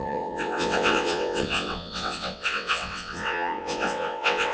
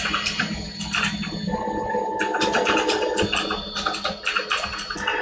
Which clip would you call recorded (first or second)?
second